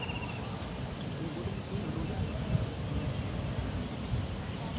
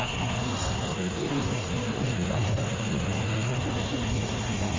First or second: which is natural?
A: first